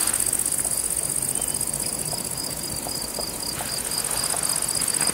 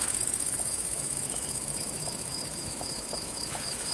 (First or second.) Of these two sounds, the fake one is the second